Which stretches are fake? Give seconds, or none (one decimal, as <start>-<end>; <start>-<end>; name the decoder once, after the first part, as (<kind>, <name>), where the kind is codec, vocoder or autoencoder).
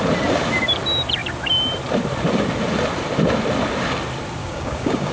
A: 4.4-5.1 (codec, DAC)